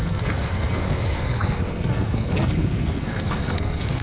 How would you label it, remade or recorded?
remade